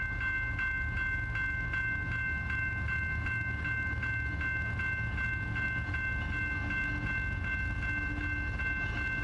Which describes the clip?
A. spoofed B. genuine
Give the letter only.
B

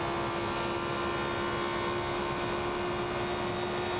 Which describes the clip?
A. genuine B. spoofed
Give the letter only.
A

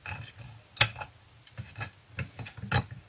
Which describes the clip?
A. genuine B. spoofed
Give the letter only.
A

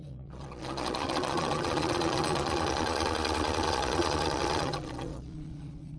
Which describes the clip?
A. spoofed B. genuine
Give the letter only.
A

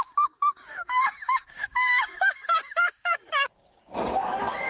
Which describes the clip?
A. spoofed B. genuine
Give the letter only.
A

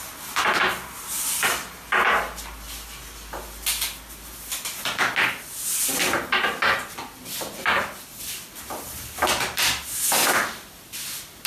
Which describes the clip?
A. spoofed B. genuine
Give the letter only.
B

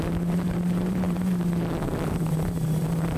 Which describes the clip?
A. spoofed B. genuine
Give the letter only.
A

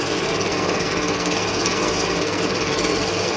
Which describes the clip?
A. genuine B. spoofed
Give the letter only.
B